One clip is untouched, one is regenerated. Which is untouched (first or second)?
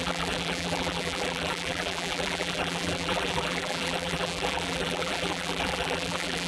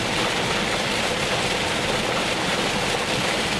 second